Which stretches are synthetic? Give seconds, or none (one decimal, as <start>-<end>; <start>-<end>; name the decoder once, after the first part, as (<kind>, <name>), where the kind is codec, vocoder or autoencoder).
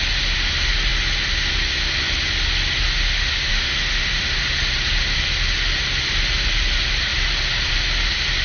3.5-4.4 (autoencoder, DAC-VAE)